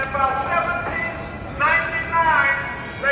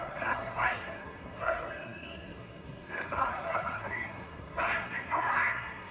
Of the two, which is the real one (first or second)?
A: first